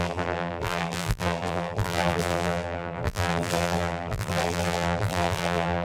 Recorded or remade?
remade